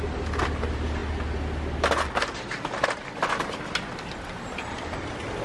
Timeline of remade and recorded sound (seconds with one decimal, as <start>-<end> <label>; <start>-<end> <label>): 0.0-5.4 recorded

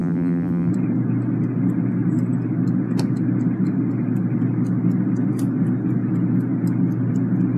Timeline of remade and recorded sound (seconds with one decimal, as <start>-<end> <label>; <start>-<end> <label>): 0.0-0.7 remade; 0.7-7.6 recorded

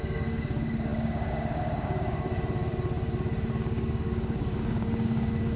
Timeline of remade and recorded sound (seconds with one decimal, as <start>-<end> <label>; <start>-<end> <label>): 0.0-2.3 remade; 2.3-3.6 recorded; 3.6-5.6 remade

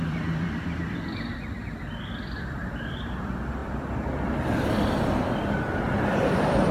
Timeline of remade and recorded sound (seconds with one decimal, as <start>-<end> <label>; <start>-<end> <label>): 0.0-6.7 remade

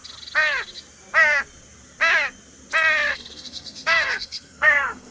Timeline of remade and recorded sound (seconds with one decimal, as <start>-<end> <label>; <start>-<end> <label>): 0.0-3.1 recorded; 3.1-5.1 remade